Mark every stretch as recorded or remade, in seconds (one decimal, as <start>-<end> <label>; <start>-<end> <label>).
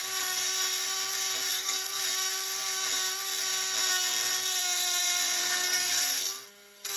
0.0-1.5 recorded; 1.5-2.0 remade; 2.0-5.4 recorded; 5.4-7.0 remade